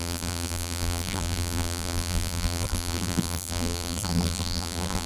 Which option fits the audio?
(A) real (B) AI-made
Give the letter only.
B